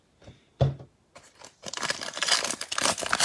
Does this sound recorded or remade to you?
recorded